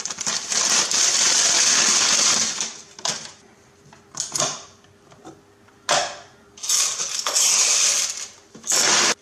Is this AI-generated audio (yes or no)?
no